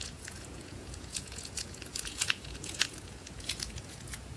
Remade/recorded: remade